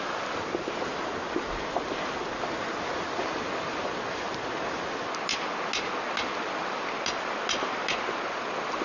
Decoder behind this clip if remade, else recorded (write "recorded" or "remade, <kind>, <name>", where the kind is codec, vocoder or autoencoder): recorded